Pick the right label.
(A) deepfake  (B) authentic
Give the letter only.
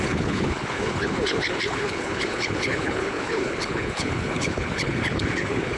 A